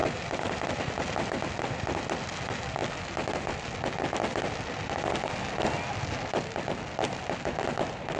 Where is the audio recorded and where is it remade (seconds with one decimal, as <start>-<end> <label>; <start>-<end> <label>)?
0.0-8.2 recorded